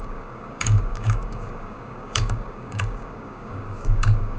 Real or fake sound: fake